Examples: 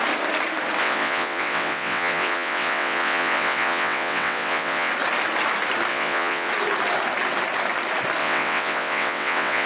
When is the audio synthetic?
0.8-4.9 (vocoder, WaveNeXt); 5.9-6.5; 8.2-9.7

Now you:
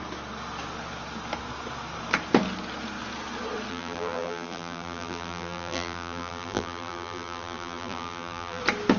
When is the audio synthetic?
3.7-8.6 (vocoder, BigVGAN v2)

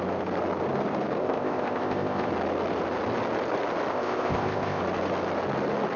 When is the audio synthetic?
1.2-2.3 (codec, ZipCodec); 3.9-4.8

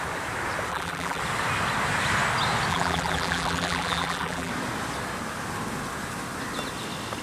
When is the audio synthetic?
0.7-1.2 (vocoder, BigVGAN v2); 2.7-4.5

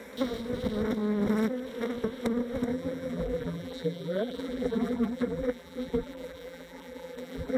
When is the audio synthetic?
2.7-7.6 (vocoder, BigVGAN v2)

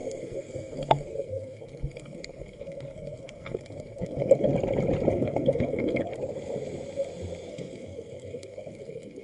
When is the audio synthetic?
0.0-4.5 (codec, SNAC); 5.1-6.1; 7.5-9.2